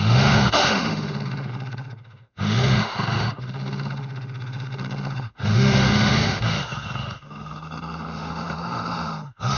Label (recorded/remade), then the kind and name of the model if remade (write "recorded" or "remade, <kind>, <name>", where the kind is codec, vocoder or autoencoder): remade, autoencoder, DAC-VAE